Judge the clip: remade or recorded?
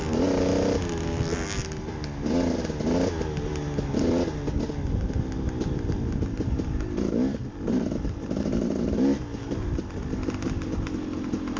recorded